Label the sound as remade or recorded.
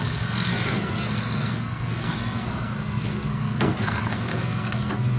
remade